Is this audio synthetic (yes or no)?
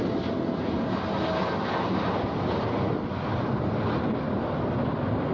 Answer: no